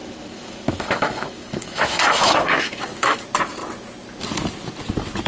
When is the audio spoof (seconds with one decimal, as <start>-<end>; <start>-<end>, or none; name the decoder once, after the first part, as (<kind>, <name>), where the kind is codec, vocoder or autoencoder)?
0.0-3.2 (autoencoder, DAC-VAE)